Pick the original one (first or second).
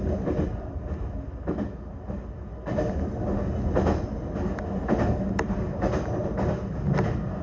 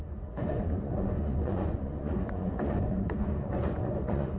first